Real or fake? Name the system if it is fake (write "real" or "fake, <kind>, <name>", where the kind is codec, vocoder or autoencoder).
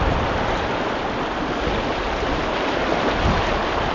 real